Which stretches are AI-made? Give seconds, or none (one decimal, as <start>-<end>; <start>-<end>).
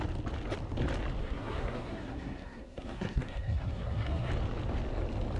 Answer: 1.2-4.3